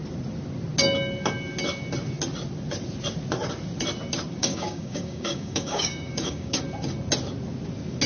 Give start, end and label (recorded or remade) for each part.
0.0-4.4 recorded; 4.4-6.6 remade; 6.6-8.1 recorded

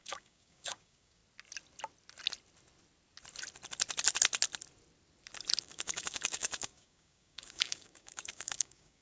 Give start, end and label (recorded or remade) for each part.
0.0-1.2 remade; 1.2-5.6 recorded; 5.6-9.0 remade

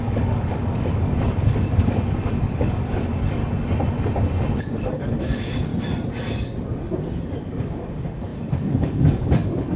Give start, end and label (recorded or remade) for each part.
0.0-3.4 remade; 3.4-4.6 recorded; 4.6-5.7 remade; 5.7-7.4 recorded; 7.4-9.8 remade

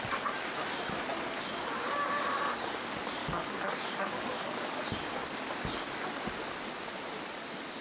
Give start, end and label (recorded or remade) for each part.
0.0-3.2 recorded; 3.2-4.8 remade; 4.8-7.8 recorded

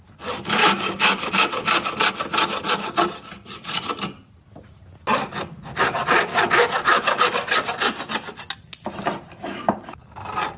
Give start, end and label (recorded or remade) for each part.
0.0-0.6 recorded; 0.6-1.3 remade; 1.3-6.3 recorded; 6.3-7.2 remade; 7.2-10.6 recorded

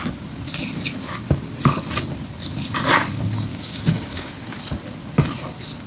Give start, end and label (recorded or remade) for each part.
0.0-3.5 recorded; 3.5-4.3 remade; 4.3-5.9 recorded

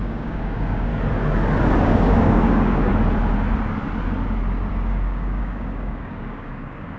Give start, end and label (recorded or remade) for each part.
0.0-0.9 remade; 0.9-1.8 recorded; 1.8-2.9 remade; 2.9-4.7 recorded; 4.7-7.0 remade